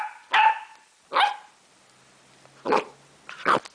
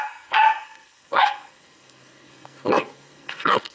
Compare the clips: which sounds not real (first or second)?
second